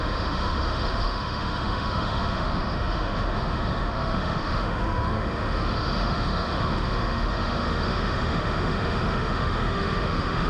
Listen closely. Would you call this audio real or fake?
fake